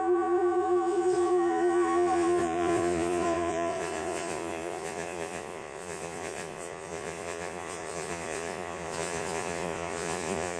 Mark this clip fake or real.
fake